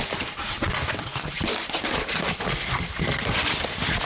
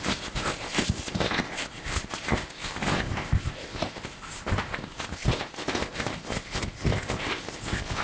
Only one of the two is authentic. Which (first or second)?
first